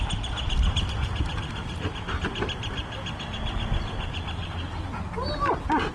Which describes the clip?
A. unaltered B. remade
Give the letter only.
A